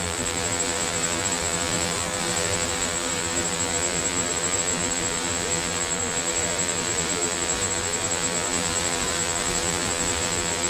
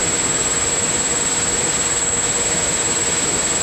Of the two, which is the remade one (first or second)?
first